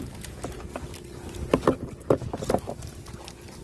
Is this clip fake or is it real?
real